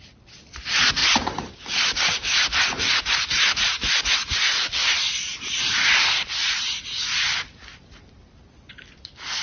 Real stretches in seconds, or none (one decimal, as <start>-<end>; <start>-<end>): 0.0-1.0; 3.9-4.6; 5.9-9.4